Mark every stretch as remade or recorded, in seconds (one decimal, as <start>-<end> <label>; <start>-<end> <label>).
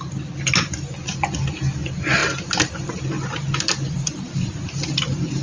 0.0-5.4 recorded